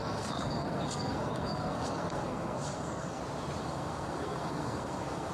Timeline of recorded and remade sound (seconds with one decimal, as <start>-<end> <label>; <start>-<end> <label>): 0.0-3.2 remade; 3.2-3.6 recorded; 3.6-5.3 remade